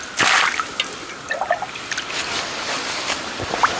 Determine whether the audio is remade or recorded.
recorded